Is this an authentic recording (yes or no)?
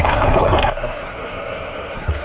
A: no